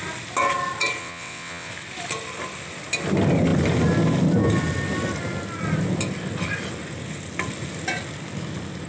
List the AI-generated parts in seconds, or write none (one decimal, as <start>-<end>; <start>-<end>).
1.0-1.7